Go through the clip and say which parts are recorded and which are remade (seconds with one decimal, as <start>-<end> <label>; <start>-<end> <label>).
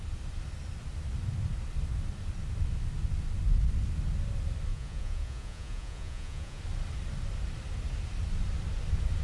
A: 0.0-4.7 recorded; 4.7-6.6 remade; 6.6-9.2 recorded